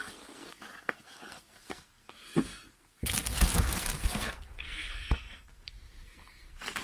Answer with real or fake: fake